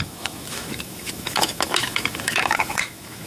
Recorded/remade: remade